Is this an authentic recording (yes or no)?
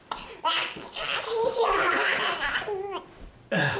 no